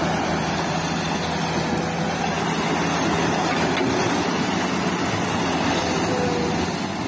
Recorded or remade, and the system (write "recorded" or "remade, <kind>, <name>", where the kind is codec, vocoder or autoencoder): recorded